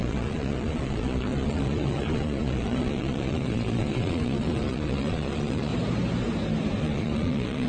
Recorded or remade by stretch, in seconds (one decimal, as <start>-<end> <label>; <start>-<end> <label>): 0.0-5.7 remade; 5.7-6.8 recorded; 6.8-7.7 remade